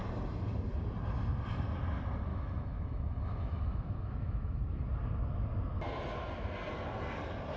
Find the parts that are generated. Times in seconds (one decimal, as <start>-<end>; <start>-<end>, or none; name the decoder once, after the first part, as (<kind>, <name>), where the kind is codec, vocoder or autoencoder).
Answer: 2.3-4.6 (autoencoder, DAC-VAE)

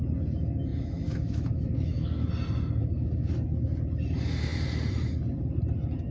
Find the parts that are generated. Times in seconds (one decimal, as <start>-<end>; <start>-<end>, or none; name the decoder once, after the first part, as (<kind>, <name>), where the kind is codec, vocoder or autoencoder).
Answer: 0.7-2.3 (autoencoder, DAC-VAE); 2.8-3.3